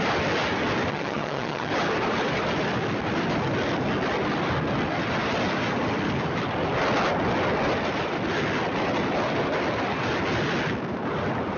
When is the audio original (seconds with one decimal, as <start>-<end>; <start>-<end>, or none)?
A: 0.0-0.9; 1.7-11.6